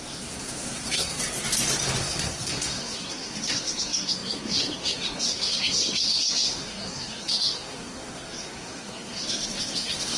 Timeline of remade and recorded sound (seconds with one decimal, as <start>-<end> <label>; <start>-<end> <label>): 0.0-1.2 remade; 1.2-2.0 recorded; 2.0-10.2 remade